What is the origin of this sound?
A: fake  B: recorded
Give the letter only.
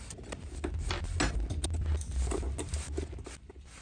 B